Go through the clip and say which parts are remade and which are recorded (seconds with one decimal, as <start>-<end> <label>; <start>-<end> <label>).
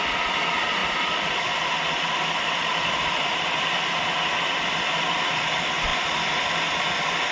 0.0-7.3 recorded